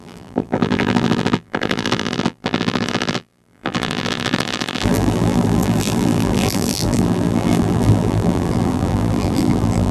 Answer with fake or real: fake